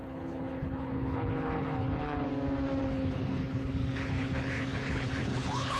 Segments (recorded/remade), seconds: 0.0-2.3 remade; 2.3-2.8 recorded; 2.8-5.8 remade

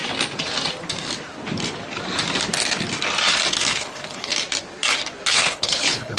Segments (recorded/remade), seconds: 0.0-3.7 recorded; 3.7-4.3 remade; 4.3-5.3 recorded; 5.3-6.2 remade

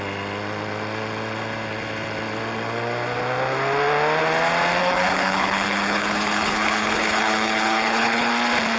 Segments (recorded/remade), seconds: 0.0-4.8 recorded; 4.8-8.3 remade; 8.3-8.8 recorded

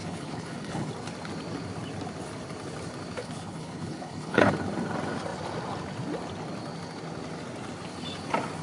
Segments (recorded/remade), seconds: 0.0-0.9 remade; 0.9-3.2 recorded; 3.2-4.5 remade; 4.5-8.6 recorded

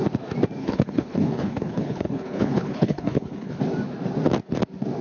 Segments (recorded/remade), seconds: 0.0-0.6 recorded; 0.6-3.6 remade; 3.6-5.0 recorded